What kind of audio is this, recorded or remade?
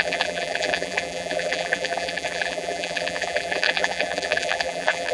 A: remade